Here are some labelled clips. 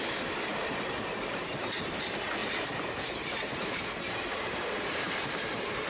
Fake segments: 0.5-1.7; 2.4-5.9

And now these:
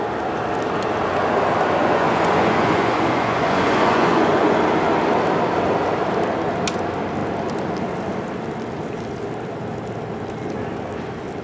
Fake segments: 1.8-4.6

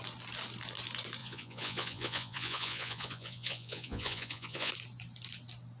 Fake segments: 1.2-4.7

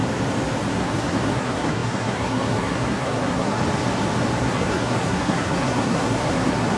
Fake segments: 0.7-3.6; 4.4-6.8

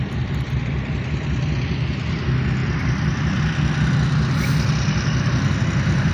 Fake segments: none

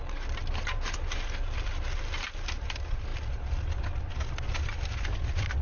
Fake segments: none